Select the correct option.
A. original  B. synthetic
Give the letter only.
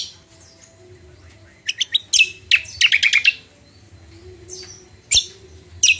A